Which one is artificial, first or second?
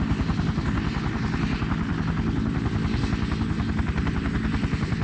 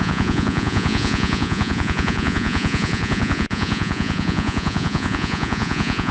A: second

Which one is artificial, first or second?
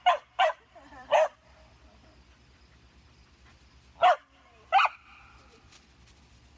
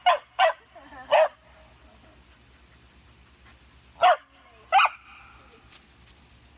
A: first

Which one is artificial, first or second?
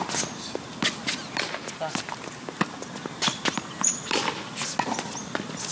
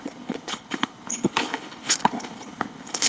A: second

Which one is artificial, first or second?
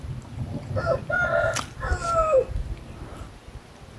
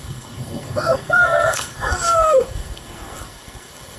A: second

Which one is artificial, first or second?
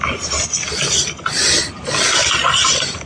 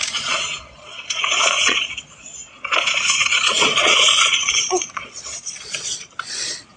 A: second